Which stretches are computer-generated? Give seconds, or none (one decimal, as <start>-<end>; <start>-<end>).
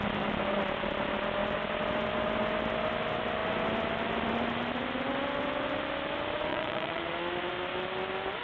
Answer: 6.5-7.0